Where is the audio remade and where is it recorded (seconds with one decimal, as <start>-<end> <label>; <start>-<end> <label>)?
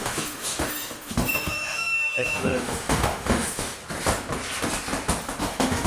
0.0-3.8 remade; 3.8-5.4 recorded; 5.4-5.9 remade